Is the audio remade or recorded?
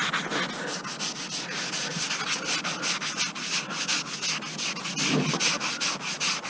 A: recorded